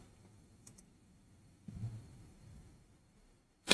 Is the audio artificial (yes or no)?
yes